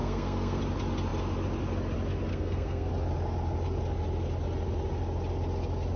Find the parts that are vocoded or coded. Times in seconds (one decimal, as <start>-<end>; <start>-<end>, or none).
0.0-0.6; 2.3-2.9